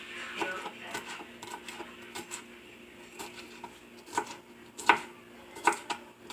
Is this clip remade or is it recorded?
recorded